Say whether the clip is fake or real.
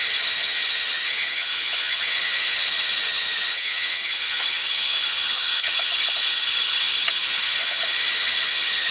fake